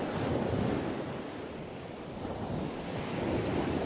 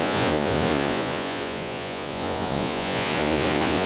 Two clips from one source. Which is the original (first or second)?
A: first